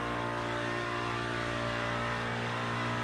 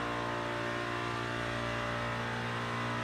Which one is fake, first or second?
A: first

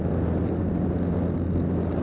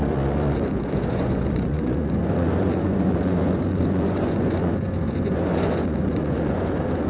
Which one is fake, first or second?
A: second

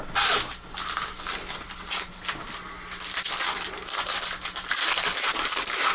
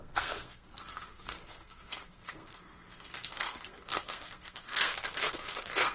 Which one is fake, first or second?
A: second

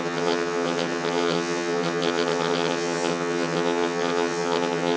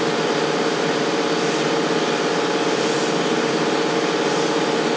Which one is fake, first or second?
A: first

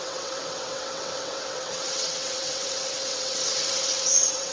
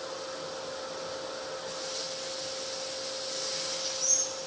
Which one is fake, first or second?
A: first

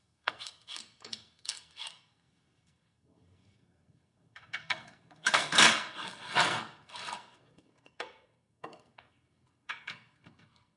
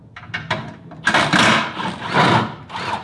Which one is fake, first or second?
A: first